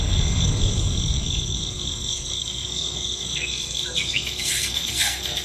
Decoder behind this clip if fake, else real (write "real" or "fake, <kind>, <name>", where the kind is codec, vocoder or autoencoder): fake, codec, SNAC